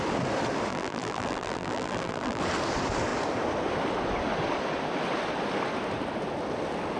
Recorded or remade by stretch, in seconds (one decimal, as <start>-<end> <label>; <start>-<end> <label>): 0.0-0.7 recorded; 0.7-2.4 remade; 2.4-7.0 recorded